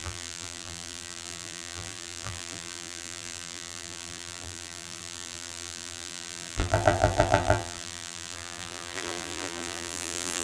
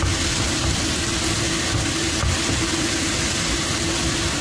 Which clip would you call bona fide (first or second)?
second